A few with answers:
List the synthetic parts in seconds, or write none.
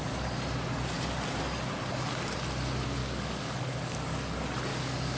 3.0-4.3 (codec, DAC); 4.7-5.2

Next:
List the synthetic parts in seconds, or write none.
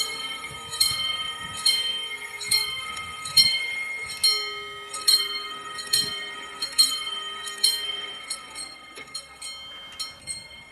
0.0-4.1 (codec, SNAC); 4.9-9.4; 10.2-10.7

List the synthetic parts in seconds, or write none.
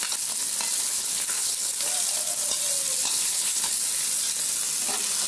0.8-1.7 (codec, HILCodec); 3.0-3.8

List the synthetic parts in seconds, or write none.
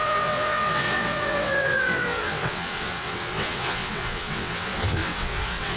0.0-5.8 (vocoder, WaveNeXt)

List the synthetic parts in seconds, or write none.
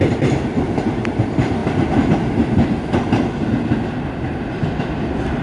none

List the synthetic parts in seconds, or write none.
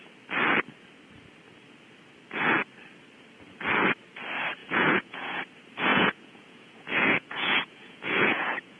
4.6-5.4 (vocoder, Vocos); 5.9-8.8